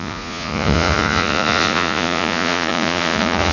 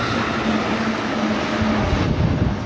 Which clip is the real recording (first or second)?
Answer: second